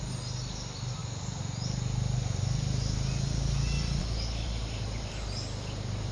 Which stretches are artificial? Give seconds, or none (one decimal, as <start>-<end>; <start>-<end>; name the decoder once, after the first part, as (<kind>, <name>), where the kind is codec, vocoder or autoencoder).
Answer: none